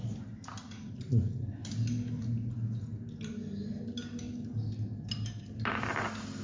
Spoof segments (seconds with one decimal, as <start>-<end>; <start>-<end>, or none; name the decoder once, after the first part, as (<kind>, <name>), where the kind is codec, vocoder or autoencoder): none